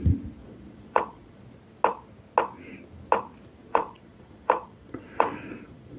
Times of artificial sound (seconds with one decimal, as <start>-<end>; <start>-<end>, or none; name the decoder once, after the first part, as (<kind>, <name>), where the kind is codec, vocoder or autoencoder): 0.4-1.4 (vocoder, Vocos); 3.6-6.0